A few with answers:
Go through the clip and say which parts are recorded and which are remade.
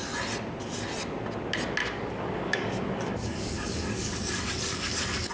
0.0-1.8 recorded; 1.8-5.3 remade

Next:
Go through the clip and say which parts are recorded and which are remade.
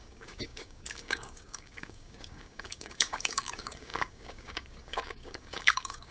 0.0-6.1 remade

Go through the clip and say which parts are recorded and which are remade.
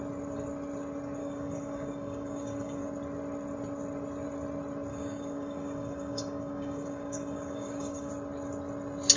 0.0-1.2 recorded; 1.2-2.8 remade; 2.8-4.9 recorded; 4.9-8.1 remade; 8.1-9.2 recorded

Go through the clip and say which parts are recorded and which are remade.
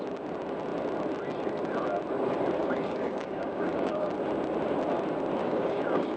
0.0-2.6 recorded; 2.6-4.1 remade; 4.1-5.4 recorded; 5.4-6.2 remade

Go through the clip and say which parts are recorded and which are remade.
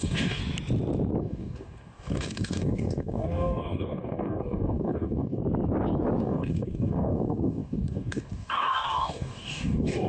0.0-0.4 remade; 0.4-1.2 recorded; 1.2-5.4 remade; 5.4-6.2 recorded; 6.2-10.1 remade